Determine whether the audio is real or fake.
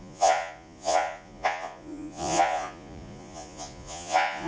fake